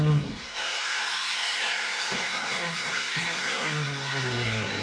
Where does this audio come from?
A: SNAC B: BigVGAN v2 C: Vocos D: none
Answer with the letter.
A